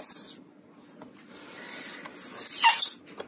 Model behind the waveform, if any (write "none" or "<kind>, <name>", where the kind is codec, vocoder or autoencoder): none